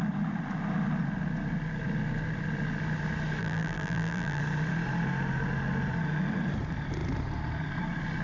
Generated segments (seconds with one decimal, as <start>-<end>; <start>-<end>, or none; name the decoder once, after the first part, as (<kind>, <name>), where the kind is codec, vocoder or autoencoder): 3.4-4.4 (vocoder, BigVGAN v2)